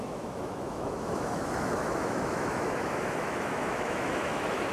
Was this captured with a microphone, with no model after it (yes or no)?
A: no